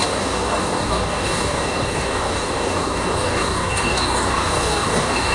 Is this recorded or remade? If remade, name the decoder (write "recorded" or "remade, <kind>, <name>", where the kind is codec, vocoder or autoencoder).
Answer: remade, codec, DAC